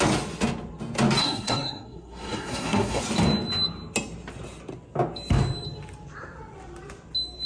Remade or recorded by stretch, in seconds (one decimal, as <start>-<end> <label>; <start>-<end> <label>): 0.0-1.2 recorded; 1.2-3.0 remade; 3.0-7.5 recorded